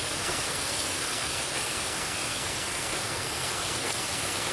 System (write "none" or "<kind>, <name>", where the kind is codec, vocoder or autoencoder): codec, SNAC